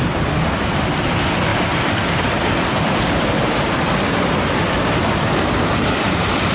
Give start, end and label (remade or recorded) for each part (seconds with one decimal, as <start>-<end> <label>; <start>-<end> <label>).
0.0-6.5 recorded